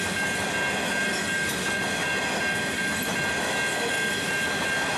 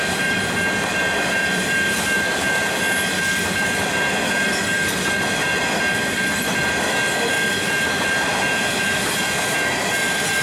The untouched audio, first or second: first